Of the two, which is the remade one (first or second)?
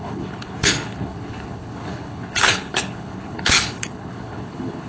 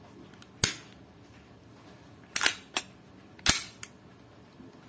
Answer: first